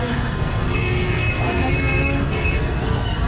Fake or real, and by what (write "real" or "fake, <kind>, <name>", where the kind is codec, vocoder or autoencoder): fake, codec, SNAC